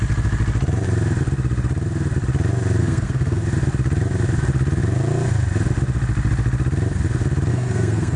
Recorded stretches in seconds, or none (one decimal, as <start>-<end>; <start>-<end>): 0.0-2.8; 3.4-7.5